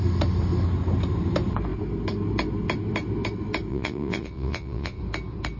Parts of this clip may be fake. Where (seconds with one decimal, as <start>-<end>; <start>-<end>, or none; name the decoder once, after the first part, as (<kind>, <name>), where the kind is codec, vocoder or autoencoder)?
3.7-5.0 (vocoder, Vocos)